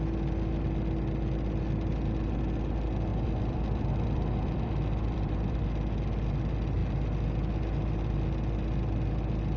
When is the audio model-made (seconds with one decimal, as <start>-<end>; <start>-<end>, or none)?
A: 3.1-5.6